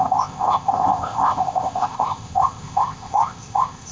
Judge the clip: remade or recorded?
remade